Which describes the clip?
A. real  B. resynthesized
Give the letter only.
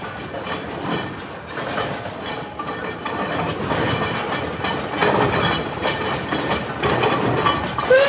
A